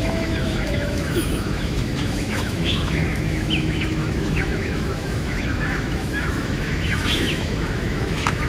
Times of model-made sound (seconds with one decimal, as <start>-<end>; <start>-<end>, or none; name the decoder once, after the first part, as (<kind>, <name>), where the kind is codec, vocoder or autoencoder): 0.0-8.5 (autoencoder, DAC-VAE)